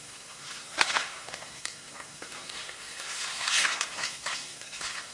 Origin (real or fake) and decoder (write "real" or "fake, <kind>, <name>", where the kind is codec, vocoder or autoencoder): fake, codec, SNAC